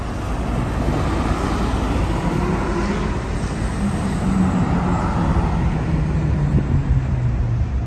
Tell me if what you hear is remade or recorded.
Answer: recorded